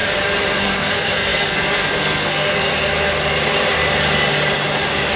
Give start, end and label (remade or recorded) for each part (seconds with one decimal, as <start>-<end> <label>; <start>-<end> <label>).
0.0-0.6 recorded; 0.6-2.7 remade; 2.7-5.2 recorded